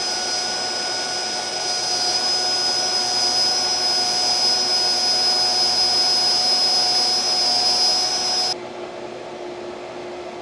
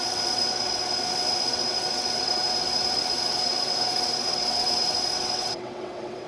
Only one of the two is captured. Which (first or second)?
first